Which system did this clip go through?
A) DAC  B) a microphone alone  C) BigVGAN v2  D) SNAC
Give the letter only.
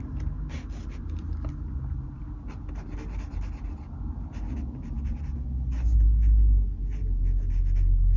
B